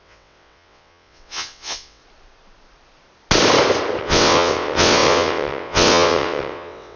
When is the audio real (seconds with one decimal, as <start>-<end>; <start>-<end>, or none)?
2.0-4.0

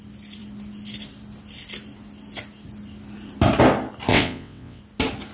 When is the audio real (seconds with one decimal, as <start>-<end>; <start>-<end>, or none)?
0.0-4.1; 4.8-5.3